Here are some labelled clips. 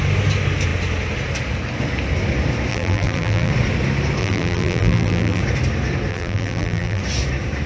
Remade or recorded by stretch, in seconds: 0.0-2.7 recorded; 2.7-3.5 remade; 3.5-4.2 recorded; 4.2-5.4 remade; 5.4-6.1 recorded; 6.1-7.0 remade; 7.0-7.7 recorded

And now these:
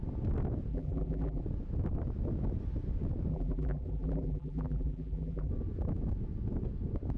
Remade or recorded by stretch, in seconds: 0.0-0.7 recorded; 0.7-1.4 remade; 1.4-3.3 recorded; 3.3-5.5 remade; 5.5-7.2 recorded

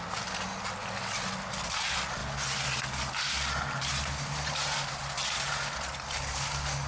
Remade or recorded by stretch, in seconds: 0.0-6.9 recorded

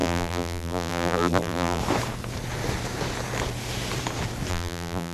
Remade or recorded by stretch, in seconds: 0.0-1.8 remade; 1.8-4.5 recorded; 4.5-5.1 remade